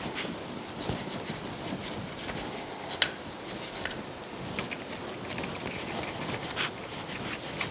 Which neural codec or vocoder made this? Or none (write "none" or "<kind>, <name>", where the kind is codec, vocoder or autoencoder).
none